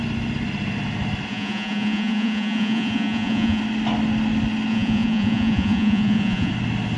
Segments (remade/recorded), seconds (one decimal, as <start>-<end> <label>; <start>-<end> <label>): 0.0-1.3 recorded; 1.3-3.6 remade; 3.6-4.7 recorded; 4.7-6.5 remade; 6.5-7.0 recorded